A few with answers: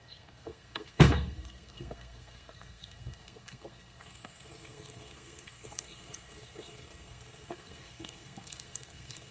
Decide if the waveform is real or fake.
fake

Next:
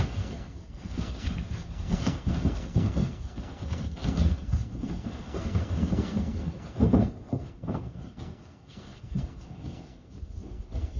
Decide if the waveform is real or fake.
fake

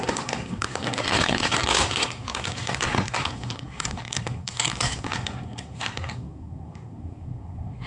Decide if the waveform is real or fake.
fake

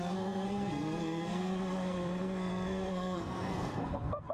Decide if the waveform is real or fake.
fake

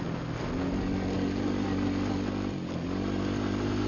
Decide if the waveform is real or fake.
real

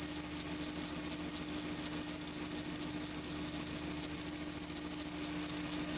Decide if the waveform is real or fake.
real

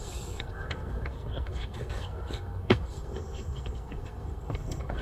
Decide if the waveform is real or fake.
fake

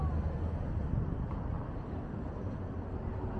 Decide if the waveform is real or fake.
real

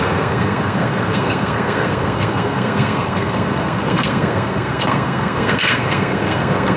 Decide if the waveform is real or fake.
fake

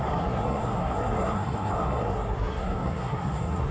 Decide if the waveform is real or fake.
fake